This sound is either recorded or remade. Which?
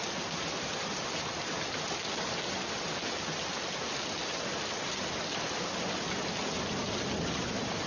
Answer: recorded